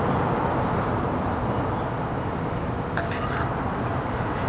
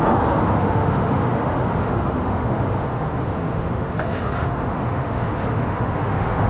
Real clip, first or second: first